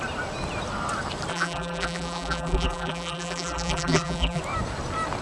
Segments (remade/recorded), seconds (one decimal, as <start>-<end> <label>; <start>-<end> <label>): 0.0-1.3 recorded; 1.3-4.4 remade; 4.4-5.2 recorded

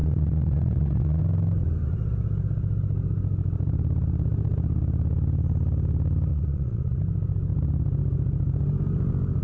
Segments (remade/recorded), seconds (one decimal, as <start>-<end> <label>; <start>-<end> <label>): 0.0-1.2 remade; 1.2-6.3 recorded; 6.3-7.0 remade; 7.0-9.4 recorded

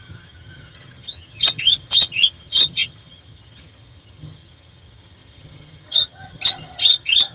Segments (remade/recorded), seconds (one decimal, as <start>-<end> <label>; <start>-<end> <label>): 0.0-7.3 remade

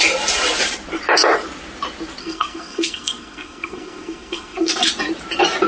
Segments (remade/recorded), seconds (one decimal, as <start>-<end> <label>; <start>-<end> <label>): 0.0-2.2 recorded; 2.2-4.9 remade; 4.9-5.7 recorded

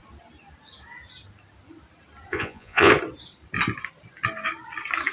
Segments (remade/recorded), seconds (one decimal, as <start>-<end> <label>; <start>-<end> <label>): 0.0-2.3 recorded; 2.3-2.9 remade; 2.9-5.1 recorded

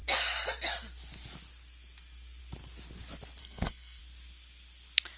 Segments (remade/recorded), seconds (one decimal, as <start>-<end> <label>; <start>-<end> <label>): 0.0-3.4 recorded; 3.4-4.0 remade; 4.0-5.2 recorded

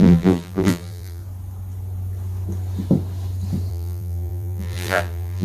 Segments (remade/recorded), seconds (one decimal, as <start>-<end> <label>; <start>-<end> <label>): 0.0-1.2 remade; 1.2-3.7 recorded; 3.7-5.4 remade

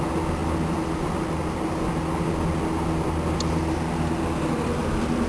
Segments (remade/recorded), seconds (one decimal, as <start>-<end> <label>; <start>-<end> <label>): 0.0-5.3 recorded